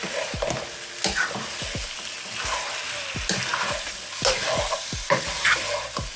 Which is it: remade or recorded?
recorded